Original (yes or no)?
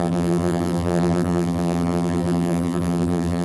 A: no